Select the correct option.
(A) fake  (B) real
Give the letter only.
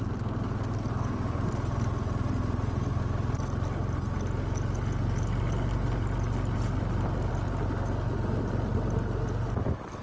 B